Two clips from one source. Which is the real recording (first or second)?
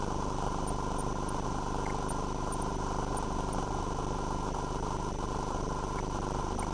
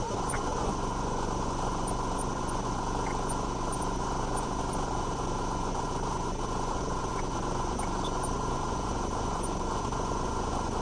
first